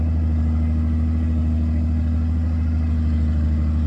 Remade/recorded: recorded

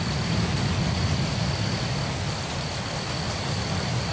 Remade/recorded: recorded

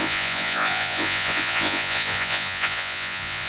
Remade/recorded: remade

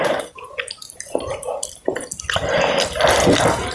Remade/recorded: recorded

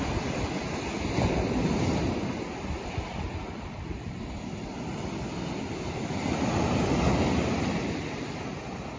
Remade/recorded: recorded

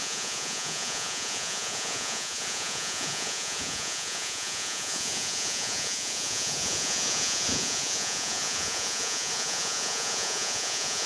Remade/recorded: remade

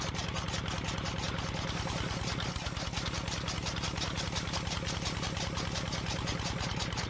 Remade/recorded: recorded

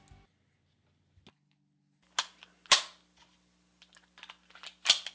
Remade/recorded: recorded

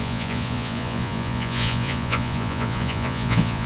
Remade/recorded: remade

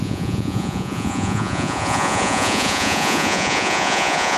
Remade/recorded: remade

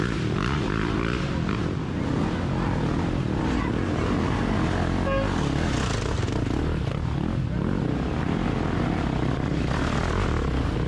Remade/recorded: recorded